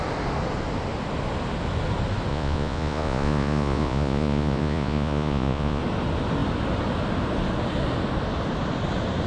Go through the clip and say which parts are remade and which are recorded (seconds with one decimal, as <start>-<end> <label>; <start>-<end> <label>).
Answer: 0.0-2.3 recorded; 2.3-5.8 remade; 5.8-9.3 recorded